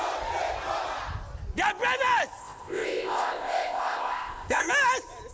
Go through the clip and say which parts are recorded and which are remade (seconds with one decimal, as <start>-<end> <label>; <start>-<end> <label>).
0.0-2.4 recorded; 2.4-4.7 remade; 4.7-5.3 recorded